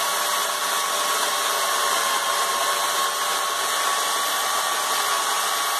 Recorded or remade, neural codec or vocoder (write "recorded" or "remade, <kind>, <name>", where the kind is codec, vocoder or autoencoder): recorded